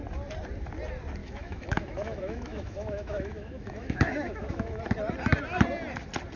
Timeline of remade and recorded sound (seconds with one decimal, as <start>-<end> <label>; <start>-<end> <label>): 0.0-1.2 recorded; 1.2-4.8 remade; 4.8-6.4 recorded